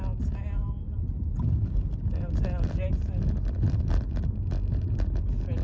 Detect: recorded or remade recorded